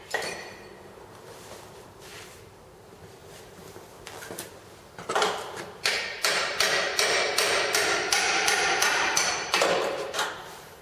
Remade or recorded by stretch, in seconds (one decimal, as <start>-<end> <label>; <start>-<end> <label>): 0.0-3.2 remade; 3.2-4.4 recorded; 4.4-10.8 remade

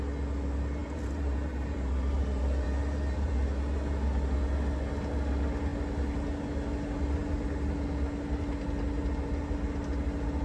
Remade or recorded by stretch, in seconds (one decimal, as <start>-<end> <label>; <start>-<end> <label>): 0.0-0.8 recorded; 0.8-3.3 remade; 3.3-10.4 recorded